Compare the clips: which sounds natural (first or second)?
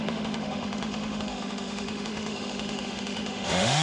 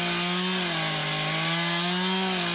second